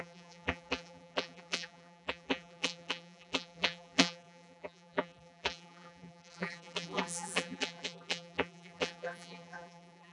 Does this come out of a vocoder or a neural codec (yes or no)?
yes